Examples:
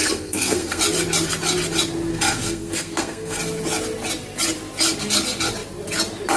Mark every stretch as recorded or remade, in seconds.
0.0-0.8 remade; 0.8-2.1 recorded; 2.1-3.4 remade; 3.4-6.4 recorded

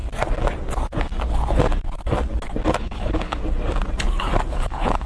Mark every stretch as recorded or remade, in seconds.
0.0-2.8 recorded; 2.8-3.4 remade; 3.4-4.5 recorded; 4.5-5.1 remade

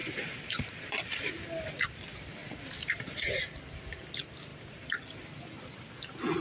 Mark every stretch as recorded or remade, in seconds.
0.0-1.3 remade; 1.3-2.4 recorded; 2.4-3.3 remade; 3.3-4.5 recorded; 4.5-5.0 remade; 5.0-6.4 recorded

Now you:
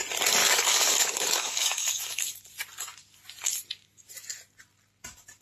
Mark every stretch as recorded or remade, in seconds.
0.0-0.4 recorded; 0.4-2.4 remade; 2.4-5.4 recorded

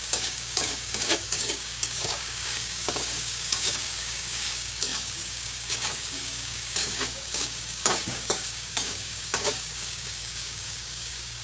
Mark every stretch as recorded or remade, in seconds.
0.0-11.4 remade

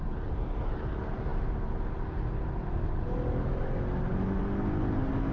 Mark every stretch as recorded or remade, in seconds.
0.0-5.3 recorded